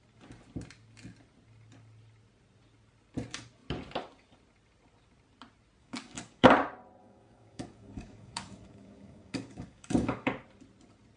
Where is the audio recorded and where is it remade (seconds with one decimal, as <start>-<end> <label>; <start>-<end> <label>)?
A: 0.0-5.8 recorded; 5.8-6.5 remade; 6.5-7.0 recorded; 7.0-10.3 remade; 10.3-11.2 recorded